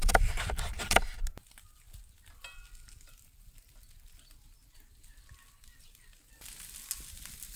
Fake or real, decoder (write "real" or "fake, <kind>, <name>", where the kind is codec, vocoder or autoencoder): real